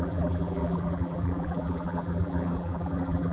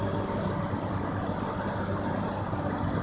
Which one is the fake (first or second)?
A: first